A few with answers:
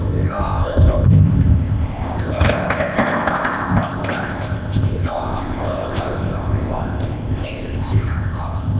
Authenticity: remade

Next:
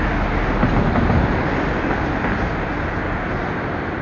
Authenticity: recorded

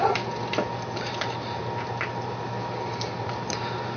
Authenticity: recorded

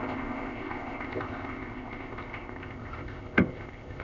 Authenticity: remade